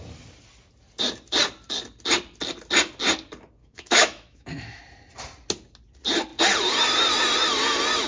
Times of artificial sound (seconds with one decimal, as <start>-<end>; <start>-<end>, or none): 3.6-4.8